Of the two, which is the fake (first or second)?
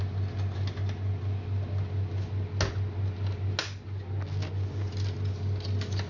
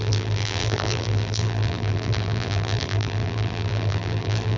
second